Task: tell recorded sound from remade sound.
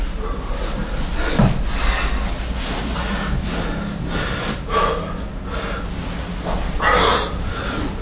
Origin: recorded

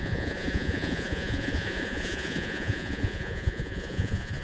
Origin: remade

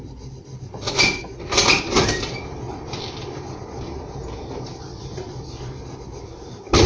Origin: recorded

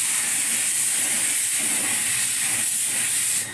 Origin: recorded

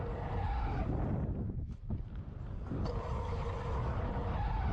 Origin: recorded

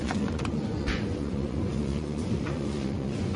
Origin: remade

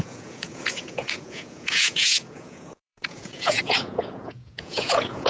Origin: remade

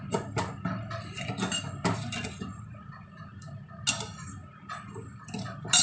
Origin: recorded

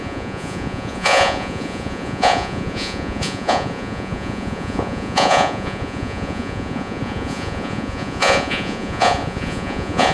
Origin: remade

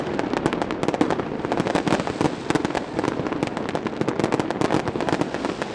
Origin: recorded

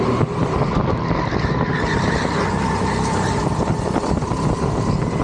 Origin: recorded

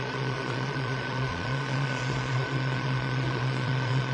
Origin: remade